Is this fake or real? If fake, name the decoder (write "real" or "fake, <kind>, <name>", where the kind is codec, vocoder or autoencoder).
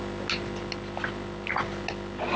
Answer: real